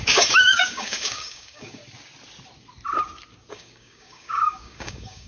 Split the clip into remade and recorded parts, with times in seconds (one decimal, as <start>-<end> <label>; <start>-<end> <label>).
0.0-1.8 remade; 1.8-3.5 recorded; 3.5-5.3 remade